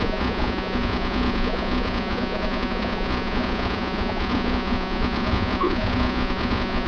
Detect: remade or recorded remade